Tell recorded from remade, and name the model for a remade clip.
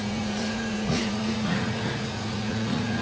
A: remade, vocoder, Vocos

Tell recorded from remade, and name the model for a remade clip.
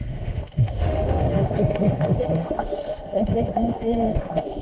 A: remade, autoencoder, DAC-VAE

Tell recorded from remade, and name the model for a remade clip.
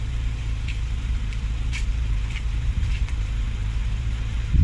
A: remade, vocoder, BigVGAN v2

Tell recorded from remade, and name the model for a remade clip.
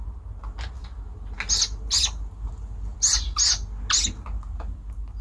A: recorded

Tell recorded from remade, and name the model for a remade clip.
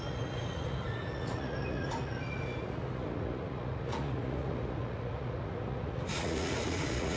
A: remade, vocoder, Vocos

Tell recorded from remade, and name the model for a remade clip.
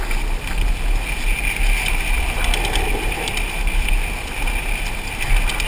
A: recorded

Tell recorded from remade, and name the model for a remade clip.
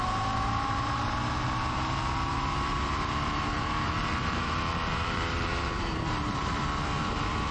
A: remade, vocoder, BigVGAN v2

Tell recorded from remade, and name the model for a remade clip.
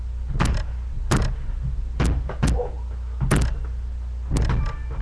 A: recorded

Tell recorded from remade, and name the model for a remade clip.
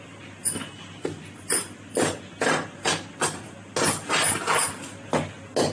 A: recorded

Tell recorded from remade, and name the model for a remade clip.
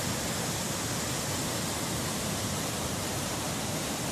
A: recorded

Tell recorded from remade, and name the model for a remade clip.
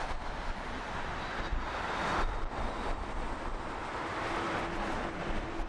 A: recorded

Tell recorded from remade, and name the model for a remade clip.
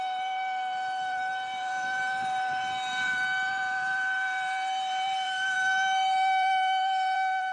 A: remade, vocoder, BigVGAN v2